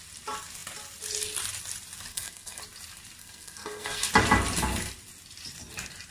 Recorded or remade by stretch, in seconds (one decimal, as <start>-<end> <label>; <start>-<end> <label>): 0.0-2.1 recorded; 2.1-2.6 remade; 2.6-3.2 recorded; 3.2-4.1 remade; 4.1-6.1 recorded

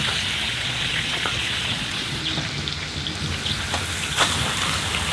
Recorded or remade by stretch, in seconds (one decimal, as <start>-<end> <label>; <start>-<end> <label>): 0.0-0.5 recorded; 0.5-2.2 remade; 2.2-5.1 recorded

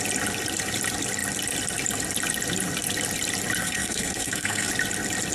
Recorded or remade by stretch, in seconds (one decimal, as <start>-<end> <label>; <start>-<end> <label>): 0.0-3.6 recorded; 3.6-4.7 remade; 4.7-5.3 recorded

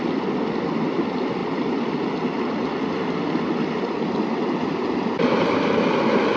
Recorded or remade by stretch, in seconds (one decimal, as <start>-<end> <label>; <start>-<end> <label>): 0.0-6.4 recorded